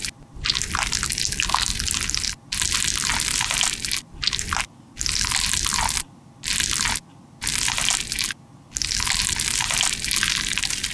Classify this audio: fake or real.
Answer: real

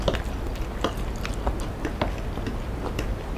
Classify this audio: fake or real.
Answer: real